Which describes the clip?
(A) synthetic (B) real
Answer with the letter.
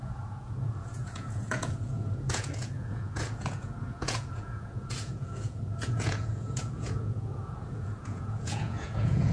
A